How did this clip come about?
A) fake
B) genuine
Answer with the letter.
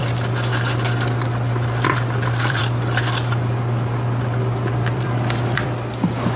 A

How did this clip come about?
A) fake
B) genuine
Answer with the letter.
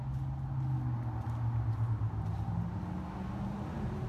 B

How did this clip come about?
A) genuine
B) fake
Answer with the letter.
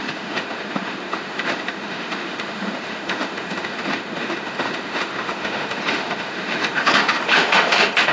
B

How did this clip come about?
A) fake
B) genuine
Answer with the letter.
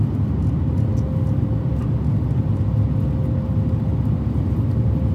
B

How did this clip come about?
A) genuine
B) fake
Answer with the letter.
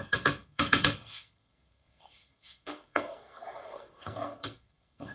B